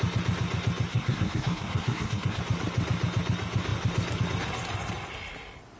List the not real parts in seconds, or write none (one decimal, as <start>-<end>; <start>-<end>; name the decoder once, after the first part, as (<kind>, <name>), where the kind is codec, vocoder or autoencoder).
0.9-2.4 (codec, SNAC)